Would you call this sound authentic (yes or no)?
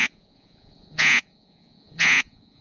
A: no